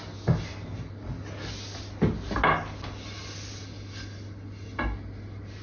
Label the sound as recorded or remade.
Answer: recorded